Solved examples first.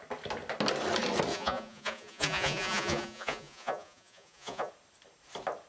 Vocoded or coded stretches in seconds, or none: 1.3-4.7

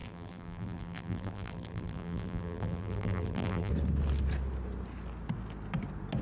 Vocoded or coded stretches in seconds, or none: 0.0-3.7

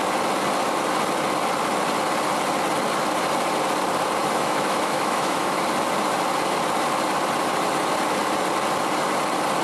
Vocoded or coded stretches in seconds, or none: 4.2-5.6

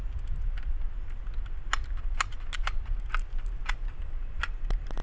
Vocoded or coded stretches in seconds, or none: none